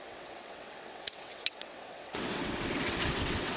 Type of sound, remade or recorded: remade